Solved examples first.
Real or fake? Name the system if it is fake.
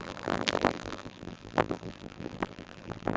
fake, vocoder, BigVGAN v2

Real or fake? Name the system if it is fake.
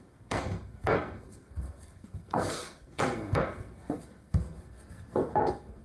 fake, codec, SNAC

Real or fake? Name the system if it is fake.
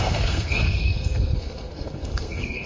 fake, codec, SNAC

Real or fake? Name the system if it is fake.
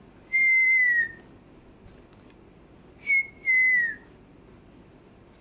real